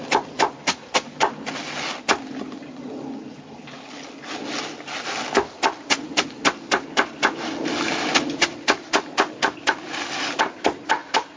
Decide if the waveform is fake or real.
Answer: real